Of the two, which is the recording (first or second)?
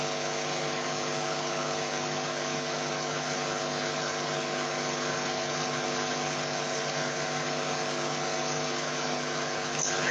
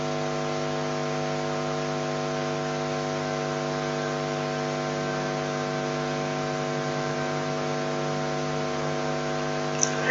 second